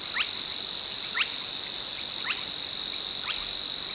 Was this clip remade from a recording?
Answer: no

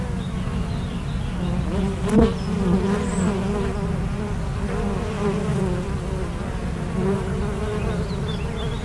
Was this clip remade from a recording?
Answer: no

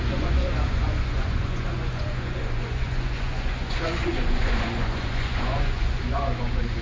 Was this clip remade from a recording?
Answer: yes